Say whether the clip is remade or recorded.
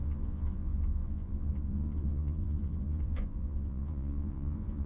remade